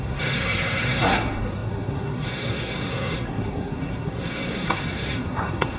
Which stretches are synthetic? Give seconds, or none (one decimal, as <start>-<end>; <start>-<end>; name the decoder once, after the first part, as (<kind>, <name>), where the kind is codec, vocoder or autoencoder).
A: 0.0-5.8 (codec, SNAC)